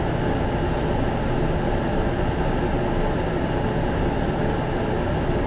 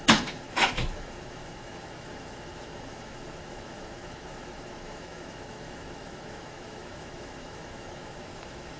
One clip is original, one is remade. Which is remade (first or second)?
second